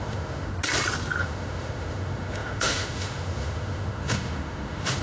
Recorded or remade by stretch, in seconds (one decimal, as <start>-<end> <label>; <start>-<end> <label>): 0.0-0.5 remade; 0.5-1.2 recorded; 1.2-5.0 remade